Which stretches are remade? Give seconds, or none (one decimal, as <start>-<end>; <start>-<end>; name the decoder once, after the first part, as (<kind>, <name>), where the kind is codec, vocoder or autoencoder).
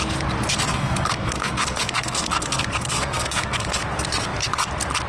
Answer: 0.7-3.8 (codec, SNAC)